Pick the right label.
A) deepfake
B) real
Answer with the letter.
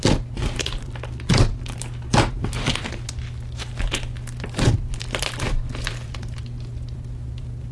B